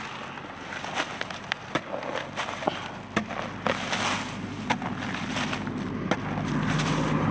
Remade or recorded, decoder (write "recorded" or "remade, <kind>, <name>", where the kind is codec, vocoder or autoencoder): recorded